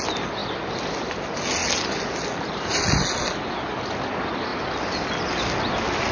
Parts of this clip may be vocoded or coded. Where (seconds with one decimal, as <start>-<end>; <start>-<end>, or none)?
none